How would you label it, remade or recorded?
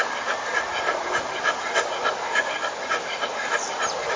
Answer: recorded